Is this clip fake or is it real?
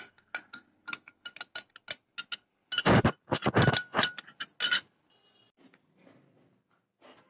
real